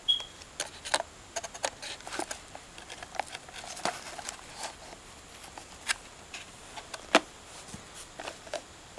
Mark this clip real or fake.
fake